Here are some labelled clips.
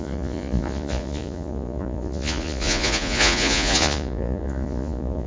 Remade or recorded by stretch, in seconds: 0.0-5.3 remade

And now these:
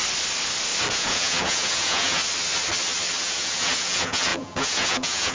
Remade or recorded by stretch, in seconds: 0.0-0.9 recorded; 0.9-2.2 remade; 2.2-3.2 recorded; 3.2-5.3 remade